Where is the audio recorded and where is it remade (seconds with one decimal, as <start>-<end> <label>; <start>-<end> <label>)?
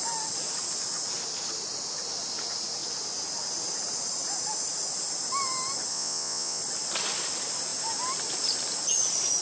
0.0-5.9 recorded; 5.9-6.6 remade; 6.6-9.4 recorded